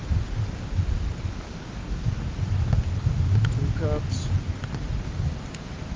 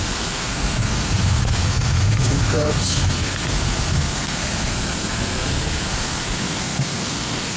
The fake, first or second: second